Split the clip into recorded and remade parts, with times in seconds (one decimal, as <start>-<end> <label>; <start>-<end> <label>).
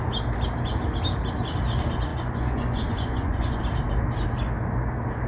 0.0-2.1 recorded; 2.1-3.6 remade; 3.6-5.3 recorded